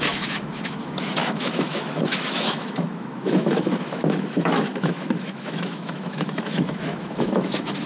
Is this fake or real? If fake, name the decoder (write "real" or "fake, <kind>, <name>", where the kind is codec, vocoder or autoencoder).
fake, autoencoder, DAC-VAE